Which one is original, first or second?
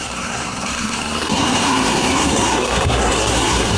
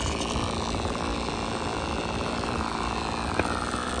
second